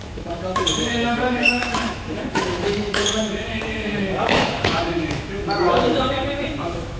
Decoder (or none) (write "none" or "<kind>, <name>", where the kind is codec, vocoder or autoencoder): autoencoder, DAC-VAE